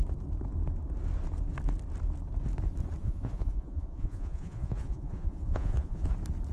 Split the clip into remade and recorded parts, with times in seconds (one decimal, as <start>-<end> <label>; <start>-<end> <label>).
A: 0.0-3.0 recorded; 3.0-6.1 remade; 6.1-6.5 recorded